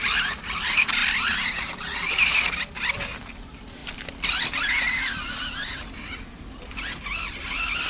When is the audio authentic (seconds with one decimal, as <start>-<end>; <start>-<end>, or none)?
0.0-1.0; 2.2-7.9